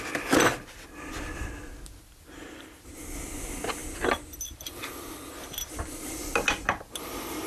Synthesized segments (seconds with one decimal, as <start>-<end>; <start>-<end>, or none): 3.8-5.4